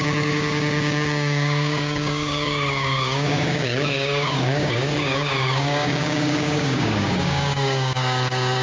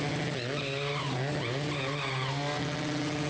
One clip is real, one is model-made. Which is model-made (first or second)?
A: first